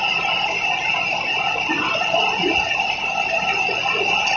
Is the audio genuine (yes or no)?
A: yes